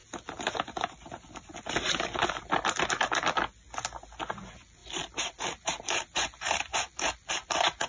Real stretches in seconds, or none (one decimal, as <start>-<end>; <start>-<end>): 0.0-7.9